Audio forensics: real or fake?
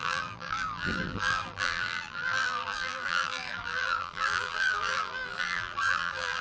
fake